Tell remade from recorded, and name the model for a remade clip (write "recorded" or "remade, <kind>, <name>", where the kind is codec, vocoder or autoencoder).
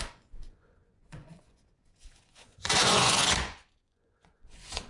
remade, vocoder, Vocos